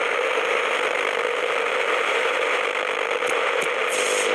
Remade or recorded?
recorded